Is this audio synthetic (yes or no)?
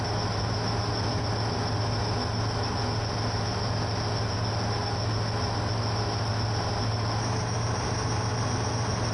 no